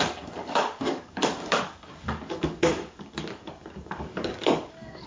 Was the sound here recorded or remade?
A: remade